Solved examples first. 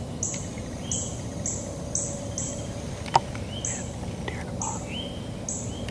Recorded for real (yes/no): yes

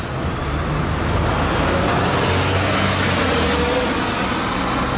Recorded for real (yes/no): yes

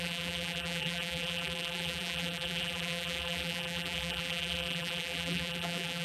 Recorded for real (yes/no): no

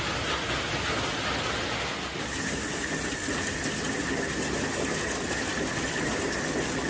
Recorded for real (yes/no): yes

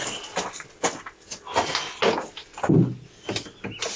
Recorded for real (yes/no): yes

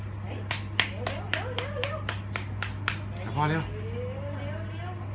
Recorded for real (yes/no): yes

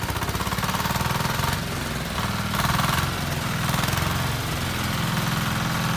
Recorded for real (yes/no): yes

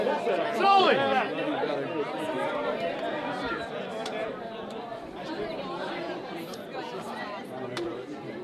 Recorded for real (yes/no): no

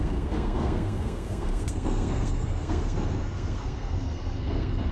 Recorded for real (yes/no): no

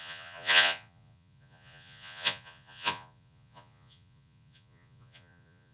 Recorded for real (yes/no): no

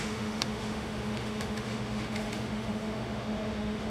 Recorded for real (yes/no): no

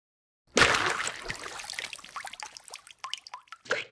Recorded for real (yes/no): yes